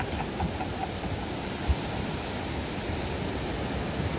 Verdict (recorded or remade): recorded